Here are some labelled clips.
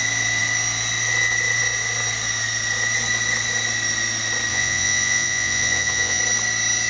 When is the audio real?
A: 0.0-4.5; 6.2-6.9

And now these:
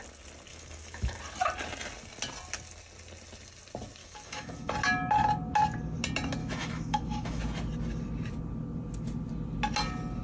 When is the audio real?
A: 0.0-0.5; 1.2-4.0; 4.7-6.4; 7.4-10.2

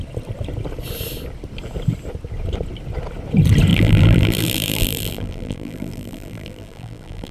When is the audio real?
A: 0.0-3.7